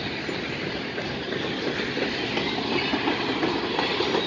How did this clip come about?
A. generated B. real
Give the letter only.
B